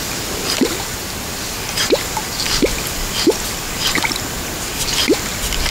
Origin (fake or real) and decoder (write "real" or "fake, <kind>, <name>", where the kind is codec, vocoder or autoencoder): real